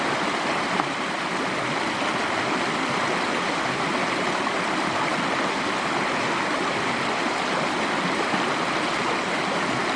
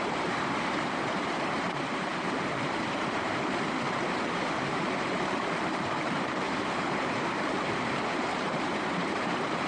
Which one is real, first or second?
first